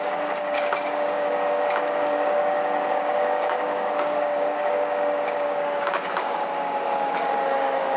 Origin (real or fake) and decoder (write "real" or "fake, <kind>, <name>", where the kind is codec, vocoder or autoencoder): fake, codec, DAC